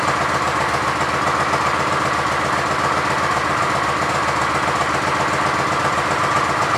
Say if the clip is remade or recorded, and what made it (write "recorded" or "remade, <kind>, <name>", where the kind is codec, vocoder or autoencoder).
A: recorded